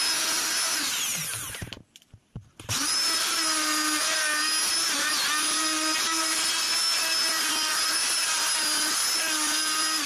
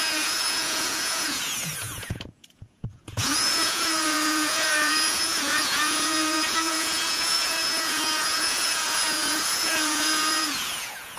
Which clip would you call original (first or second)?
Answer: first